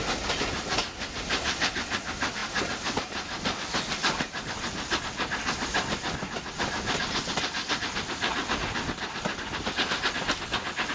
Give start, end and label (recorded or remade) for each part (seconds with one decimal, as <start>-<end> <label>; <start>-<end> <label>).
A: 0.0-10.9 recorded